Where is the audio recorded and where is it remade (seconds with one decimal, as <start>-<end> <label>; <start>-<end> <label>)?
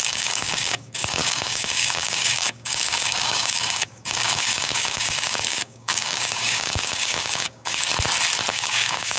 0.0-7.9 remade; 7.9-8.5 recorded; 8.5-9.2 remade